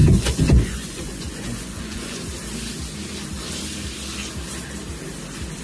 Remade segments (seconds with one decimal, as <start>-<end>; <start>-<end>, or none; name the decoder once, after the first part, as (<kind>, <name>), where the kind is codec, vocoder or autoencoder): 0.0-2.2 (vocoder, Vocos)